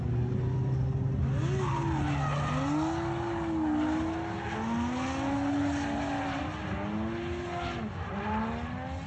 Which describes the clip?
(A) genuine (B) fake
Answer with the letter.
A